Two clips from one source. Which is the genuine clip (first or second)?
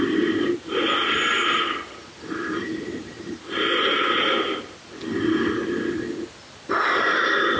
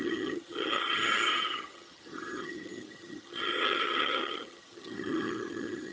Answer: first